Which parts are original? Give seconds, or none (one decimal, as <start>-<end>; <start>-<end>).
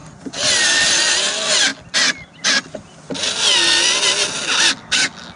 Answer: 1.0-5.4